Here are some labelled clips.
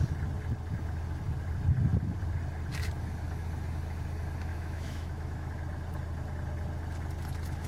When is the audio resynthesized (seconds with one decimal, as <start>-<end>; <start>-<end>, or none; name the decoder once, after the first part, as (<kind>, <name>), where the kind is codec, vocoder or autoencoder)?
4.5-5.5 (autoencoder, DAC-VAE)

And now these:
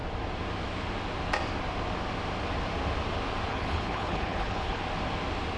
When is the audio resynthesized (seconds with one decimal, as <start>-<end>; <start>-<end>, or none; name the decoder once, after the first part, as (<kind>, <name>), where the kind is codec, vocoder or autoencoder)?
3.5-4.8 (codec, HILCodec)

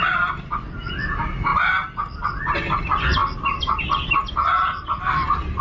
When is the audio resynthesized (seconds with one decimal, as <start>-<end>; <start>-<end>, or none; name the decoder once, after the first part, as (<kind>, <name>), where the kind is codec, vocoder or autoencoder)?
none

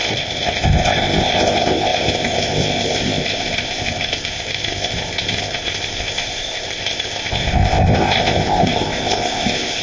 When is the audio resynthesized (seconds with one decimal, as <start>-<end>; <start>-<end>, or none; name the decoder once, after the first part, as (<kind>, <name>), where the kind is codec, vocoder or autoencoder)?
0.0-9.8 (codec, ZipCodec)